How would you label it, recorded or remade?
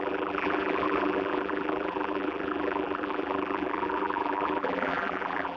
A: remade